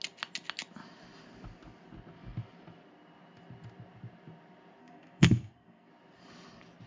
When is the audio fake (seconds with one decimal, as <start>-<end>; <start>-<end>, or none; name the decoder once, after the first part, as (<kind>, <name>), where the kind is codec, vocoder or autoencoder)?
4.8-5.9 (codec, SNAC)